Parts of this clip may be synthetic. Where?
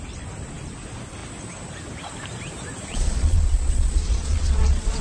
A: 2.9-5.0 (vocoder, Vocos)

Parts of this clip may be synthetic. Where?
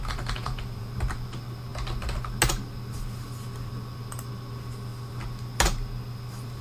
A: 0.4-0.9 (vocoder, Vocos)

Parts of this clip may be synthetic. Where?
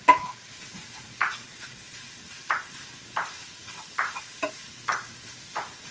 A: none